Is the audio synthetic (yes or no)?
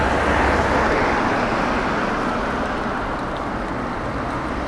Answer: no